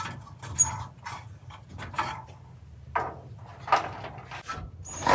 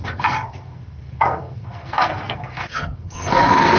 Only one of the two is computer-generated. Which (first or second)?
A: second